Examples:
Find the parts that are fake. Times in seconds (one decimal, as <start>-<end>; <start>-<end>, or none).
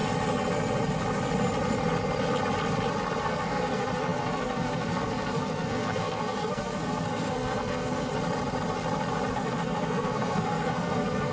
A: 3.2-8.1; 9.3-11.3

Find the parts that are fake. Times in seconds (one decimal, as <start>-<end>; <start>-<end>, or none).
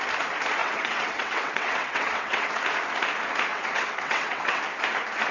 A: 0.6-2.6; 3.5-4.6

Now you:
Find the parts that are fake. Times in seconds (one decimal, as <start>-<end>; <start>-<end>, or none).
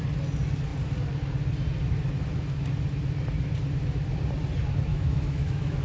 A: 4.9-5.8